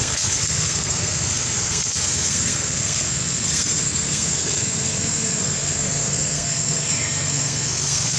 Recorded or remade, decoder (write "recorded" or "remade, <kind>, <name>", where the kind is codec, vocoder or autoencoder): remade, codec, SNAC